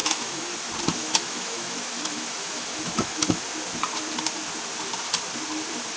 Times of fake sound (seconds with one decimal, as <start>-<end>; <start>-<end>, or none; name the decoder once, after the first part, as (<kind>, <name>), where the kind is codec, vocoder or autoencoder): 0.0-0.5 (autoencoder, DAC-VAE); 1.0-3.4